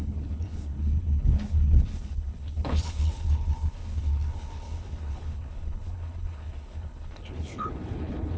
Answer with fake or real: fake